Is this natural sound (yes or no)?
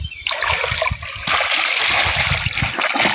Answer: yes